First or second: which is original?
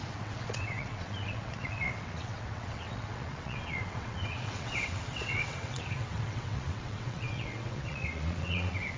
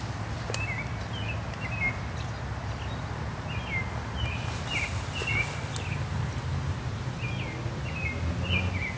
second